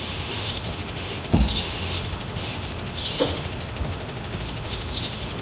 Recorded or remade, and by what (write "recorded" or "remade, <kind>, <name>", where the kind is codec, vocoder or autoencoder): remade, autoencoder, DAC-VAE